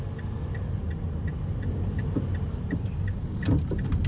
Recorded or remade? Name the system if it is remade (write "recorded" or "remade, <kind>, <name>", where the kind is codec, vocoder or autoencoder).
recorded